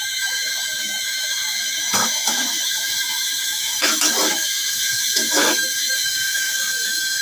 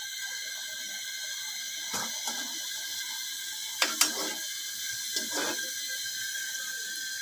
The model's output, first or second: first